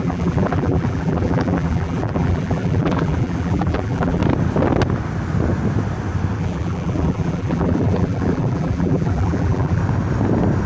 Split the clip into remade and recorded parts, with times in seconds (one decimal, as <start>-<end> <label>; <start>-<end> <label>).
0.0-4.2 remade; 4.2-6.4 recorded; 6.4-9.8 remade; 9.8-10.7 recorded